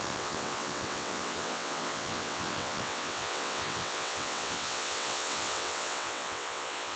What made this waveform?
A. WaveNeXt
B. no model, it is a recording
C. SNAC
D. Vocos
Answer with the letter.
A